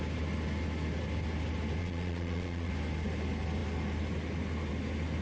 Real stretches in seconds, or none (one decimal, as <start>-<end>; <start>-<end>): 0.0-1.8; 2.7-5.2